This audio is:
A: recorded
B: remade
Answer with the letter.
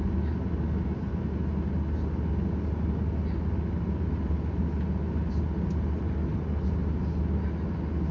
A